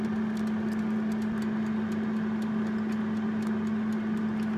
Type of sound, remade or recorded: recorded